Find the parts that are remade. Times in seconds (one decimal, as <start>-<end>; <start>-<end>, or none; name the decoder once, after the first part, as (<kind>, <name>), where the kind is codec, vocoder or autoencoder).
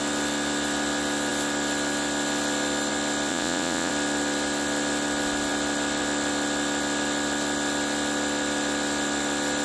3.3-3.9 (vocoder, Vocos)